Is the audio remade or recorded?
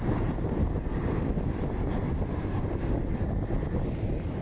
recorded